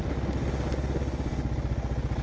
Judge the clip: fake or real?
real